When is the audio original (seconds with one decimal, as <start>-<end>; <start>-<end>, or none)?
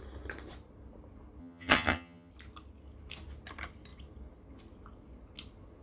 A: 0.0-1.4; 2.3-5.8